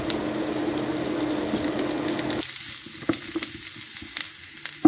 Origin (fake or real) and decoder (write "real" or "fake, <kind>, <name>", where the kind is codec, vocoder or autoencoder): real